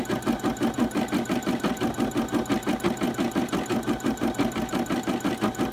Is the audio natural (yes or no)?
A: yes